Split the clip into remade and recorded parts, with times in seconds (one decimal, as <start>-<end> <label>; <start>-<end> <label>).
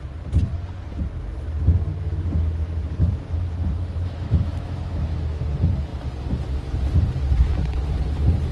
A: 0.0-1.9 recorded; 1.9-5.4 remade; 5.4-8.5 recorded